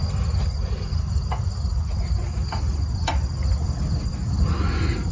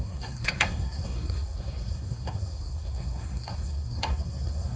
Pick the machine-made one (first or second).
second